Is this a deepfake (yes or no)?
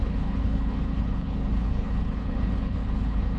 yes